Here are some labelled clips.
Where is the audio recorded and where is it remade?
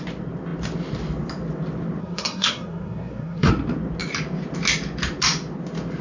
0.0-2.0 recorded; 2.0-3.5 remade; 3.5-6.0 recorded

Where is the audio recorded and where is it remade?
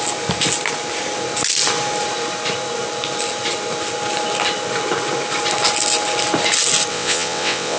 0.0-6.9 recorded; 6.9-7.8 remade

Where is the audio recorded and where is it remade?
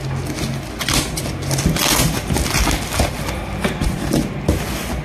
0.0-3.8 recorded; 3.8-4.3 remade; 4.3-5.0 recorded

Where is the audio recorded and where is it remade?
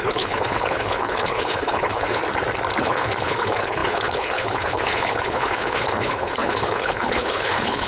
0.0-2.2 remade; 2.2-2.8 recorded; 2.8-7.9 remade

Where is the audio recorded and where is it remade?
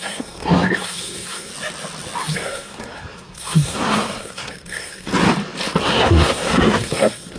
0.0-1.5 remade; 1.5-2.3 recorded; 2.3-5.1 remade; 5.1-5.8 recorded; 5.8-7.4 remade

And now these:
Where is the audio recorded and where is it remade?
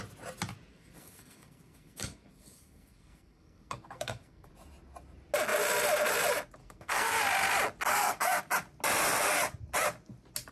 0.0-0.7 recorded; 0.7-4.5 remade; 4.5-6.6 recorded; 6.6-7.2 remade; 7.2-7.9 recorded; 7.9-8.4 remade; 8.4-10.5 recorded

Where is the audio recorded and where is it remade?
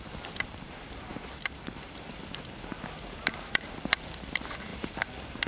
0.0-5.5 recorded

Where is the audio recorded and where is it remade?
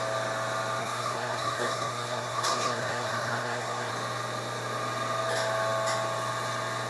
0.0-0.8 recorded; 0.8-3.9 remade; 3.9-6.9 recorded